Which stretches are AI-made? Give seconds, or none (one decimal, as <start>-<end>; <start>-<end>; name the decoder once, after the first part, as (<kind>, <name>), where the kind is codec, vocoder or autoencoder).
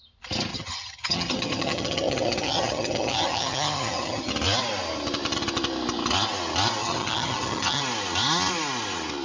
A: 0.5-4.3 (vocoder, HiFi-GAN); 6.8-7.8